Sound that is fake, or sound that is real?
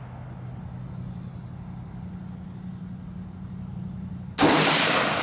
real